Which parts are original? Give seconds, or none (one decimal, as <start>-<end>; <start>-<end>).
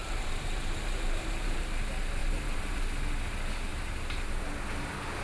1.6-2.2; 2.8-3.7; 4.4-5.2